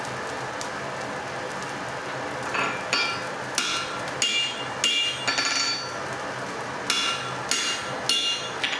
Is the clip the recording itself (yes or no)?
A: yes